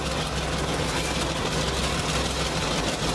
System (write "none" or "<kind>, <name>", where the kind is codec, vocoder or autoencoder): none